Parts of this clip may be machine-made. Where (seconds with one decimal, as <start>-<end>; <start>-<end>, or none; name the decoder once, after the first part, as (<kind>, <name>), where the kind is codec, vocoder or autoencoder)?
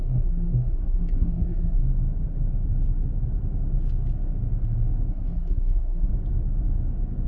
0.0-1.8 (codec, SNAC); 5.1-6.1